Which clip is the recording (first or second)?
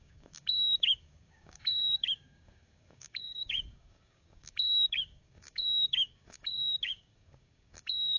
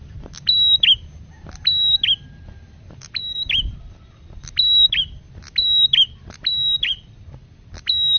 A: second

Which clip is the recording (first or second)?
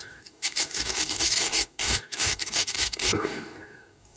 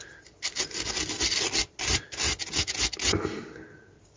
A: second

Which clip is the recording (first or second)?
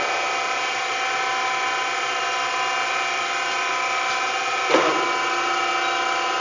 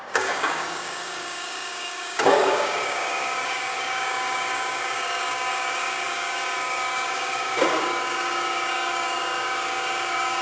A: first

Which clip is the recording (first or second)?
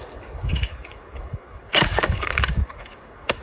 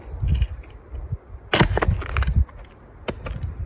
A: second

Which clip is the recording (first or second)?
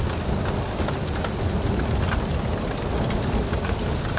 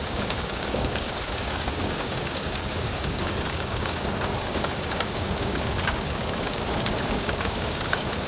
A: first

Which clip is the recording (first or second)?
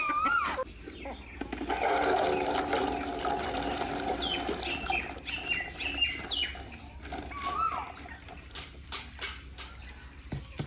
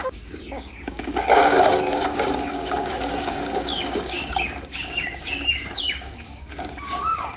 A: first